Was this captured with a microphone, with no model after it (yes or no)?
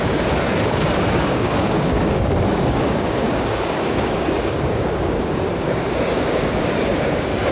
no